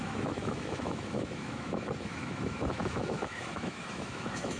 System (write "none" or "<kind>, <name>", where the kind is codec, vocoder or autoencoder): autoencoder, DAC-VAE